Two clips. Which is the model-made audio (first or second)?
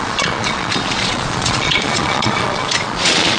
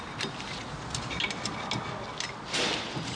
first